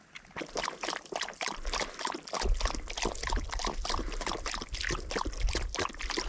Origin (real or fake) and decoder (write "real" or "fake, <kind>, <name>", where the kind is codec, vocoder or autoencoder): real